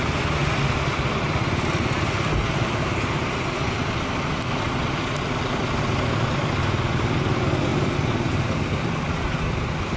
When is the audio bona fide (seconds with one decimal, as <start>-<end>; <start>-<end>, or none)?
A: 0.0-10.0